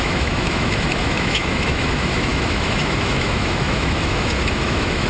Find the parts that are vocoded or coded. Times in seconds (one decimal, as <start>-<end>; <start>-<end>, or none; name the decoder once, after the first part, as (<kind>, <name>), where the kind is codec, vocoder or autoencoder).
0.0-5.1 (autoencoder, DAC-VAE)